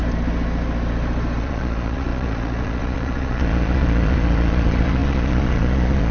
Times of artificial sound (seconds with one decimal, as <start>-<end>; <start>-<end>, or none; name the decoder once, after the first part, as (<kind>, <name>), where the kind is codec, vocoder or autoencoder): 1.4-6.1 (vocoder, Vocos)